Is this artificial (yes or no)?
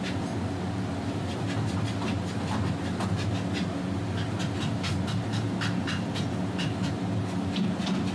no